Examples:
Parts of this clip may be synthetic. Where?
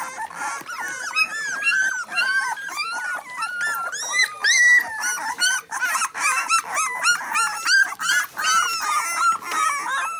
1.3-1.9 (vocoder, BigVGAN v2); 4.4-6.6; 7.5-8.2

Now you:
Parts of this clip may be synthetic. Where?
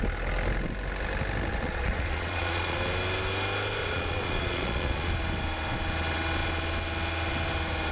1.5-2.8 (vocoder, Vocos); 3.8-5.1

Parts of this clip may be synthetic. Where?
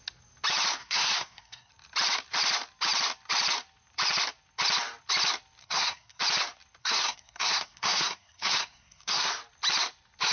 0.8-1.7 (codec, SNAC); 5.6-6.2; 6.8-9.3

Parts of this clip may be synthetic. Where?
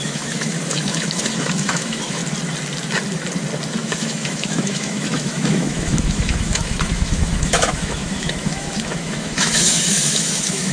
0.0-2.2 (autoencoder, DAC-VAE); 3.8-10.7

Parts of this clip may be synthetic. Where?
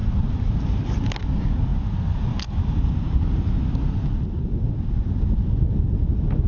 none